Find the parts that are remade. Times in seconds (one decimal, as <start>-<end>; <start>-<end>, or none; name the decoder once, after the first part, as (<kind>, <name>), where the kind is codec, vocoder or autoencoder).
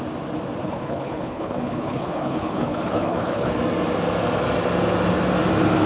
0.6-3.5 (codec, HILCodec)